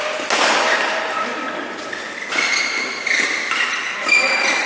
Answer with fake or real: real